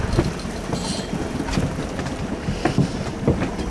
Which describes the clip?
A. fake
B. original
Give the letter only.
B